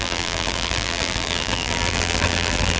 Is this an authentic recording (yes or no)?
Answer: no